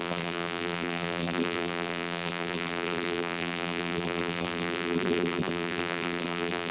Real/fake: fake